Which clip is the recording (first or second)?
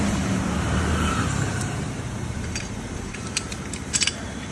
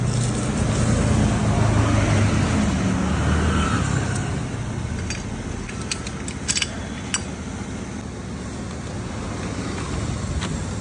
second